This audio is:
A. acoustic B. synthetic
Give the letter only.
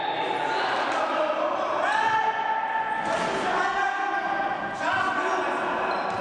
A